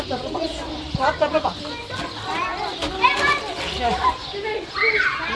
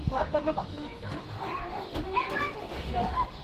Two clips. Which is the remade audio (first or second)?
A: second